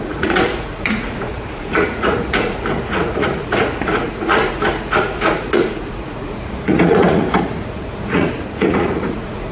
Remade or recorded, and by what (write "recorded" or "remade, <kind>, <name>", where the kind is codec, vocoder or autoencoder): remade, vocoder, Vocos